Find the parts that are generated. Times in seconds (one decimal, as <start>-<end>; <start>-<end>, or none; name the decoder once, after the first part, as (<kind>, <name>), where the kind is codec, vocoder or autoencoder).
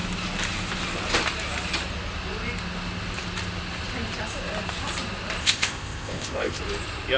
5.4-6.6 (codec, ZipCodec)